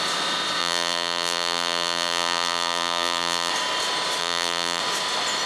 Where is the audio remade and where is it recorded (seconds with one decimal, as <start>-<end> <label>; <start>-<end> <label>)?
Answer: 0.0-0.6 recorded; 0.6-3.5 remade; 3.5-4.2 recorded; 4.2-4.8 remade; 4.8-5.5 recorded